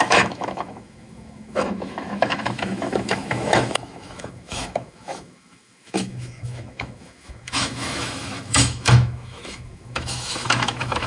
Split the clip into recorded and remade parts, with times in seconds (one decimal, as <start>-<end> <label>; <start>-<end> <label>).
0.0-11.1 remade